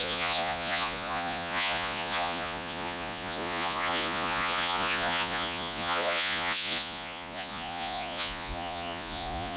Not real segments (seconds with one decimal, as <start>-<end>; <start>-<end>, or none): 0.0-9.6